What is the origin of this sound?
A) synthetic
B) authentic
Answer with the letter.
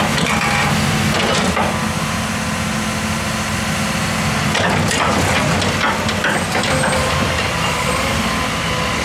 B